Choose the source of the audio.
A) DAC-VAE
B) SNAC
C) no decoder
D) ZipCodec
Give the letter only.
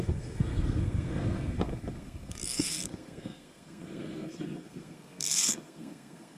B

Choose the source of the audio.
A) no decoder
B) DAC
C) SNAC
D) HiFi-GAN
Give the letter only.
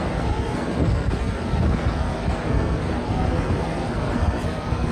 C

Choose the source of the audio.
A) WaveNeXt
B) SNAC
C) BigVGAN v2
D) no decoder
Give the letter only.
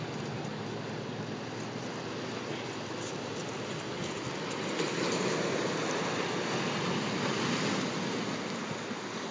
D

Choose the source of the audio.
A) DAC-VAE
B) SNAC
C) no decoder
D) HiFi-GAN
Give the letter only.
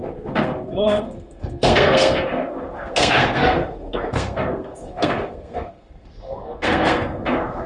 B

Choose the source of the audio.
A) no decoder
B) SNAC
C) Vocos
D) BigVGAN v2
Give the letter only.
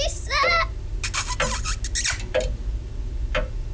A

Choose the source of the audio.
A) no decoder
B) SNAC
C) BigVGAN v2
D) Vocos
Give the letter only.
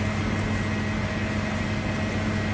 A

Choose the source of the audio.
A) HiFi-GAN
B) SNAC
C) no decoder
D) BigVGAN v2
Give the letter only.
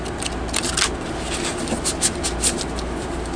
C